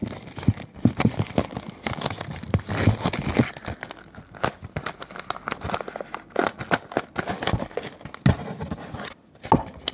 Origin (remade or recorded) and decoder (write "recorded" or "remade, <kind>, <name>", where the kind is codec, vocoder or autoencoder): recorded